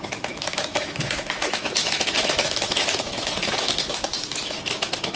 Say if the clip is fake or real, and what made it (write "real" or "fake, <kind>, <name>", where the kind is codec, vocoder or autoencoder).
fake, autoencoder, DAC-VAE